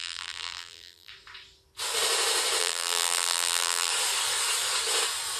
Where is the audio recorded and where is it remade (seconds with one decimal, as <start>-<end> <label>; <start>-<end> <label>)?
0.0-1.1 remade; 1.1-2.6 recorded; 2.6-3.9 remade; 3.9-5.4 recorded